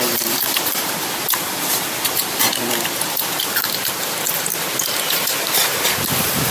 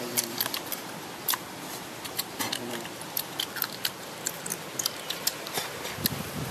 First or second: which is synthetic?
first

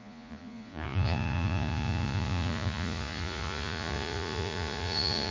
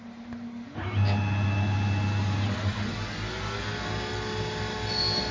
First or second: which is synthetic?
first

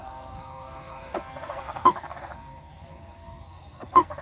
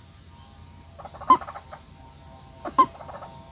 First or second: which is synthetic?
first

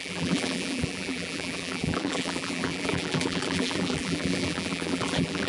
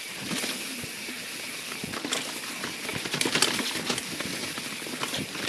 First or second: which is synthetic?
first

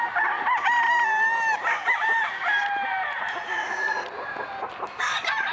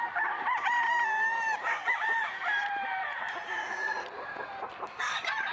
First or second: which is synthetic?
second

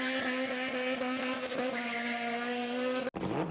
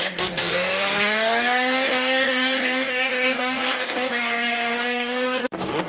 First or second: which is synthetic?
second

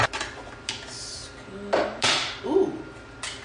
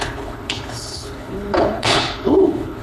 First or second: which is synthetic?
second